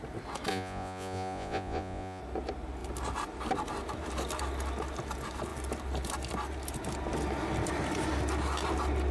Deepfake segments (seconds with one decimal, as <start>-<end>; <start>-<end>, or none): 0.5-2.2